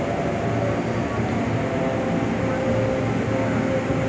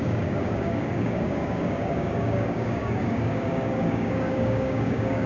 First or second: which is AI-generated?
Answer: second